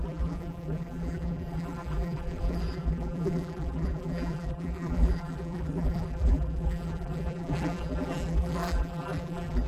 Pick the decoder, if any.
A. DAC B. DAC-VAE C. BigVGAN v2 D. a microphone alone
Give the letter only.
C